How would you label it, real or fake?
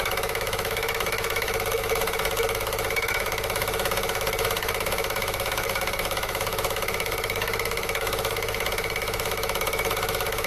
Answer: fake